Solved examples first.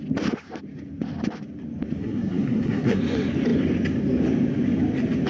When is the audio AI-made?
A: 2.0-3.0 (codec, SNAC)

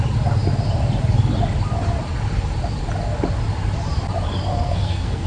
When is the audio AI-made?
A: 4.5-5.3 (codec, SNAC)

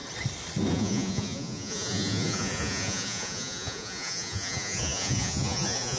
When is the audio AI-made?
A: 0.7-6.0 (vocoder, Vocos)